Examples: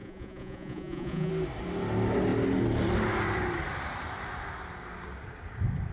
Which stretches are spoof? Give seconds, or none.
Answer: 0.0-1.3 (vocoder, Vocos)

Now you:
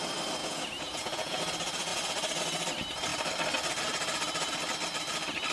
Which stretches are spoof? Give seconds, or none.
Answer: 0.4-1.4 (vocoder, Vocos)

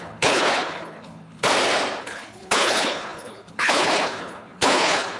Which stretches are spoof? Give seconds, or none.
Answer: 0.0-1.5 (codec, HILCodec); 2.0-5.2

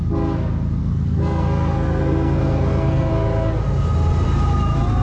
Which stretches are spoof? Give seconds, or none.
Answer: 0.8-3.1 (codec, SNAC)

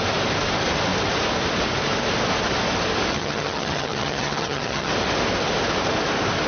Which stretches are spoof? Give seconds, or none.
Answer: 3.1-4.9 (vocoder, HiFi-GAN)